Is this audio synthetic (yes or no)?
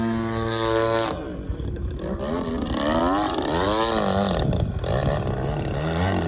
no